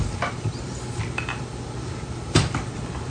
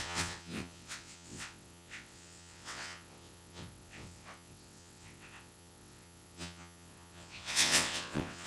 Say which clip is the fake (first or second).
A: second